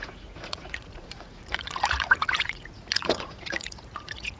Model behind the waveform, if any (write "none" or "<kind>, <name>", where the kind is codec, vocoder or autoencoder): vocoder, Vocos